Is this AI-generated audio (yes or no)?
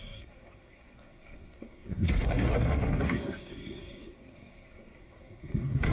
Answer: yes